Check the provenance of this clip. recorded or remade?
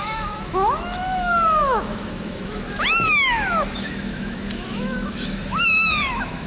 remade